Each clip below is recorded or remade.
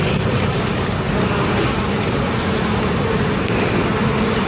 recorded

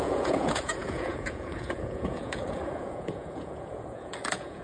remade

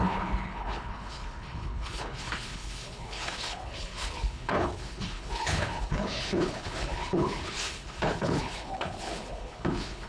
remade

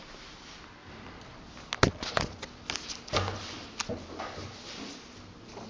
recorded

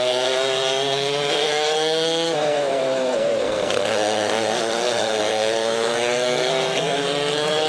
remade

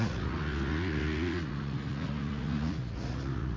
remade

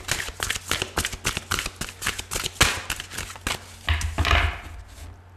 recorded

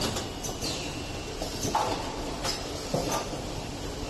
recorded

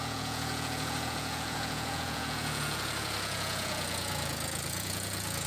remade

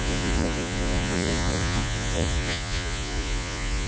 remade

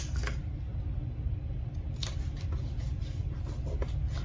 recorded